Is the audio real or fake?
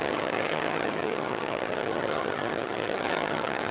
fake